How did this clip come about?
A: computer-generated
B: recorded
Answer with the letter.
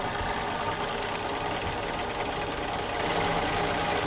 B